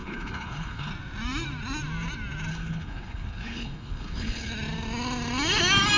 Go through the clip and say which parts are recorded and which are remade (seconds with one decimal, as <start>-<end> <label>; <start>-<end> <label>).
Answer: 0.0-0.9 remade; 0.9-2.5 recorded; 2.5-4.5 remade; 4.5-6.0 recorded